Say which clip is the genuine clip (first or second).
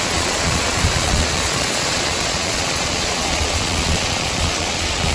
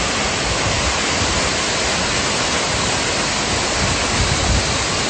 second